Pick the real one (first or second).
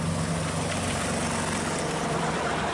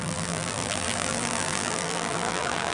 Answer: first